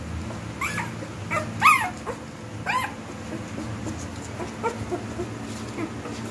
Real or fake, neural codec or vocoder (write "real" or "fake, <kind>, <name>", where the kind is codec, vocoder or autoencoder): real